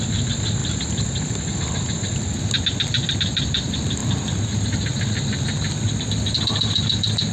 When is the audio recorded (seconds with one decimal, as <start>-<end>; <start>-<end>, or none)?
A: 0.6-3.1; 4.0-6.1